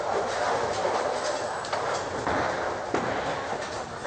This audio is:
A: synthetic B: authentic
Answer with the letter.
B